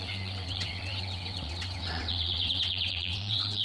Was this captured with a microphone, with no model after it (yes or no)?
no